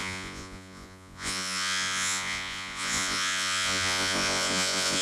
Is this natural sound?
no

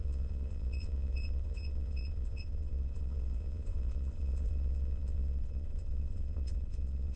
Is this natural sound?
no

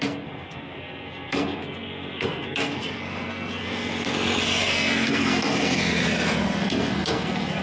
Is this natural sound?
no